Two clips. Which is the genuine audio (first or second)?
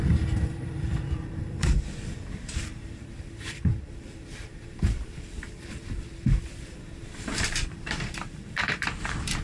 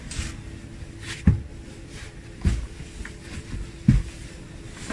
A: second